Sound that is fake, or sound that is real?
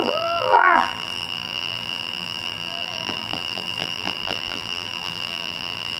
fake